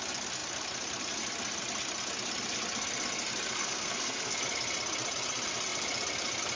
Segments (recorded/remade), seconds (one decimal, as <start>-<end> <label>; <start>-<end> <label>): 0.0-3.6 recorded; 3.6-4.4 remade; 4.4-6.6 recorded